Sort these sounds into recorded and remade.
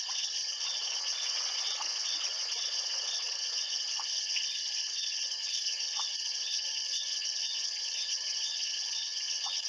remade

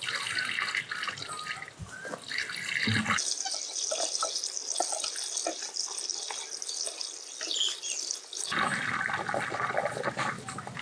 recorded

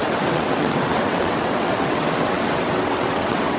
remade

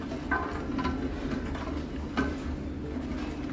recorded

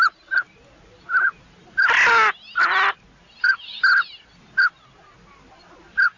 recorded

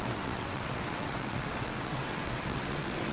remade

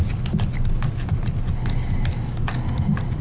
recorded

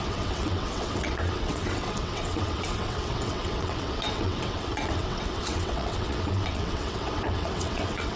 remade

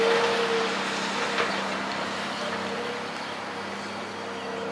recorded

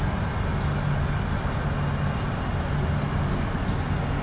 recorded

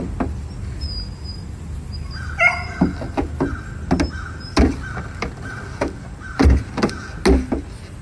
recorded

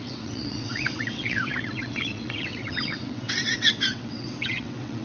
remade